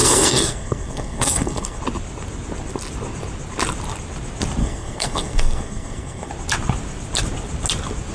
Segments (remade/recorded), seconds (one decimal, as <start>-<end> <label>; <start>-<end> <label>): 0.0-1.8 remade; 1.8-4.6 recorded; 4.6-6.3 remade; 6.3-8.1 recorded